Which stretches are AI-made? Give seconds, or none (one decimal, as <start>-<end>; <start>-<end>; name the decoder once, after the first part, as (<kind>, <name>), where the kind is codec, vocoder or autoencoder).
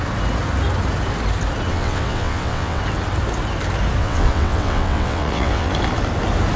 1.7-2.8 (vocoder, WaveNeXt); 4.0-5.7